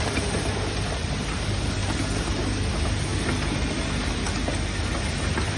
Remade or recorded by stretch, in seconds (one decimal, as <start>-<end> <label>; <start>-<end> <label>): 0.0-5.6 recorded